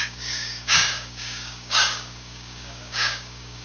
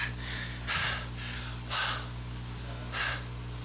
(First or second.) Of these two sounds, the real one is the second